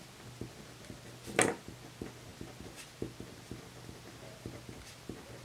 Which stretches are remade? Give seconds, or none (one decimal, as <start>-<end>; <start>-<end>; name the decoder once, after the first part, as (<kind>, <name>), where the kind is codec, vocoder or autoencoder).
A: none